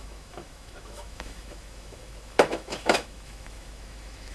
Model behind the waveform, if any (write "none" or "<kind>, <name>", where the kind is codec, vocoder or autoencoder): autoencoder, DAC-VAE